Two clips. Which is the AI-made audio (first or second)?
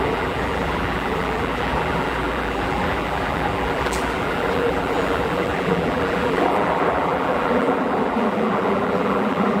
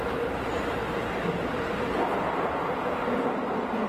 first